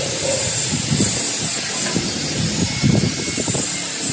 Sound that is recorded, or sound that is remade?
recorded